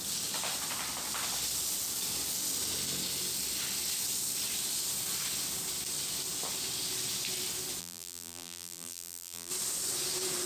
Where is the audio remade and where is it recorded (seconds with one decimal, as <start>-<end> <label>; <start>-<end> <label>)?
0.0-7.8 recorded; 7.8-9.5 remade; 9.5-10.5 recorded